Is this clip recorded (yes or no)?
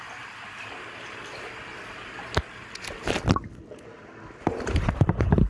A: yes